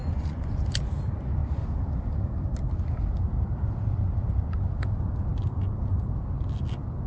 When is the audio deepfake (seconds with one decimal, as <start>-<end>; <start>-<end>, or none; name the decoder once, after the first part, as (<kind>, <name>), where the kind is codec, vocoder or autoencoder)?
0.0-0.6 (vocoder, Vocos)